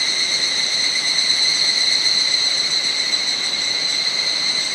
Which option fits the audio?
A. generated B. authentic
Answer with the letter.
A